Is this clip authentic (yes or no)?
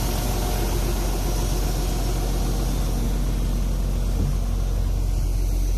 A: yes